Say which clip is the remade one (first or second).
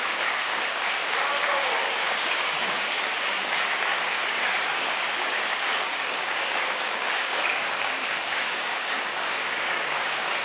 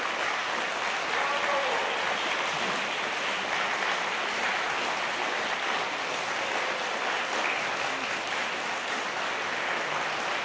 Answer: first